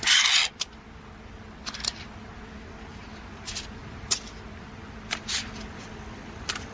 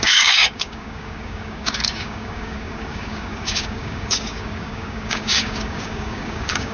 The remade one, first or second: second